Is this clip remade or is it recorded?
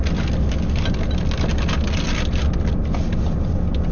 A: recorded